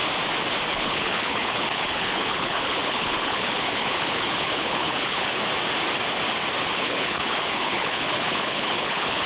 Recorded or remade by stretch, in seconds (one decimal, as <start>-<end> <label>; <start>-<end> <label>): 0.0-0.7 recorded; 0.7-5.4 remade; 5.4-6.6 recorded; 6.6-9.3 remade